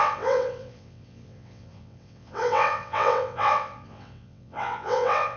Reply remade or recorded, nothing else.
remade